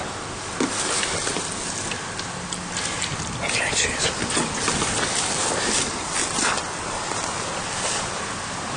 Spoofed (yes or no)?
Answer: no